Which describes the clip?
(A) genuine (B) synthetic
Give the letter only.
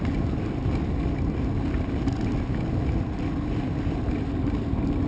A